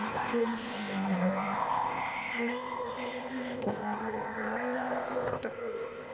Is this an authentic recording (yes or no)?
no